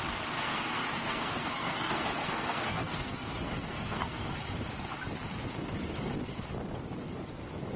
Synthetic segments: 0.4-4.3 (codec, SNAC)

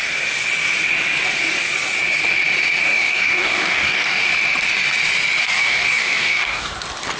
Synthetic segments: 2.8-4.3 (codec, DAC); 5.4-6.7

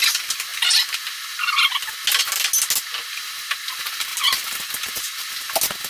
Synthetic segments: none

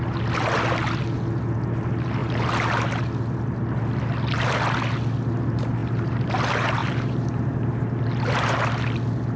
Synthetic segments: 5.8-6.3 (vocoder, BigVGAN v2); 6.8-7.9

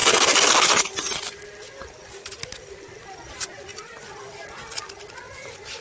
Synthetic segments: none

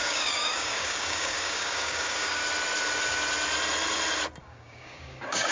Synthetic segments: 0.0-2.4 (codec, DAC); 4.4-5.5